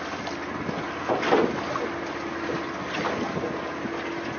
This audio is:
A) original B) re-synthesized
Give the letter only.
A